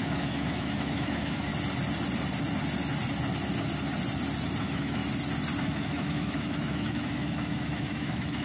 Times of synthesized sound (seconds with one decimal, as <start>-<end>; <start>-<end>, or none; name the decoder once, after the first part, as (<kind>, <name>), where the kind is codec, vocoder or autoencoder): 0.0-1.5 (autoencoder, DAC-VAE); 4.6-5.0; 5.6-8.4